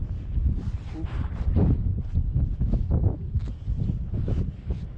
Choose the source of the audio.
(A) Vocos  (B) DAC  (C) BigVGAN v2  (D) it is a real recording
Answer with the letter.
D